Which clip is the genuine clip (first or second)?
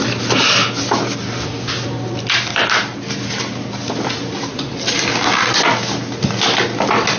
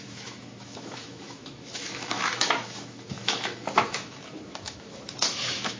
first